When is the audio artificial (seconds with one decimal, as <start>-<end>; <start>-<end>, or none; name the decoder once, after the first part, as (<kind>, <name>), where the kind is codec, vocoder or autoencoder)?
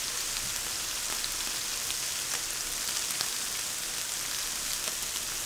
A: none